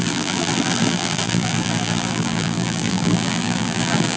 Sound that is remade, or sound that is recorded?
remade